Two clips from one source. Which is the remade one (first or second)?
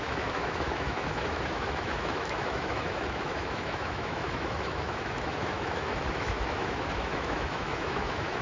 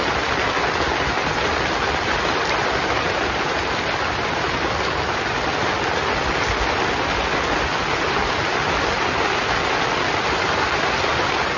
first